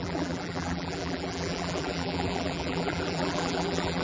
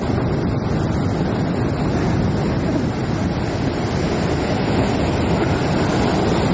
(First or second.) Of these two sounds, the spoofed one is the first